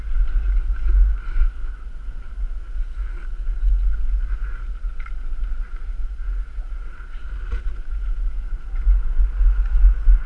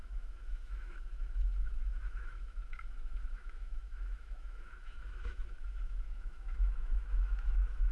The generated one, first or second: second